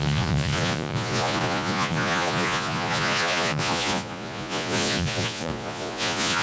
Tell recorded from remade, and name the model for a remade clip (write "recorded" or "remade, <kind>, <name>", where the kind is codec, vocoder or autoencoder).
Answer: remade, vocoder, Vocos